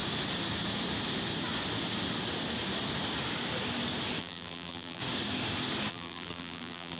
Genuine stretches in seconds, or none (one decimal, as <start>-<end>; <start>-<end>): 0.0-4.2; 5.0-5.9